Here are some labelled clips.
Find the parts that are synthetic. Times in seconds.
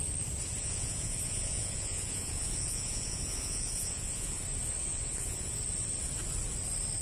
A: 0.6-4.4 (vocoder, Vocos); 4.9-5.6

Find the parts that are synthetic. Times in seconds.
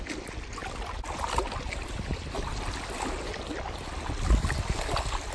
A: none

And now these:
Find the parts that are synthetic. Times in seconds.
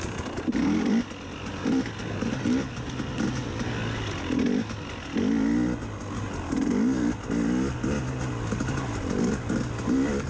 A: none